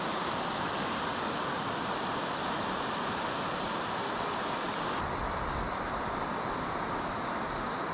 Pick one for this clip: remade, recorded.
recorded